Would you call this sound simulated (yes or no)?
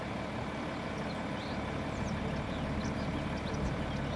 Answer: no